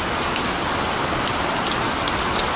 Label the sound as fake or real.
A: real